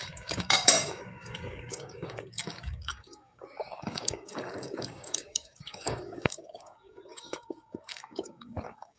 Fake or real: fake